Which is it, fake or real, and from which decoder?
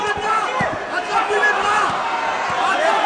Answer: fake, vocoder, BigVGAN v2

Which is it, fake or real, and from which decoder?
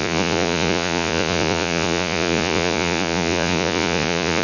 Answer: fake, vocoder, Vocos